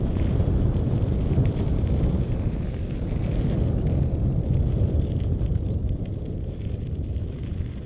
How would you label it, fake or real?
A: fake